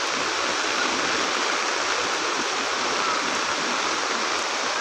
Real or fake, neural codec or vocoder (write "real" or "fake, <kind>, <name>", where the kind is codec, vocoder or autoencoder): real